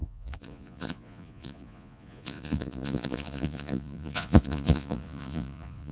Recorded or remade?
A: remade